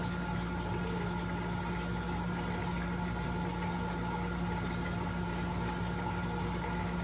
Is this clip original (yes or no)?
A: yes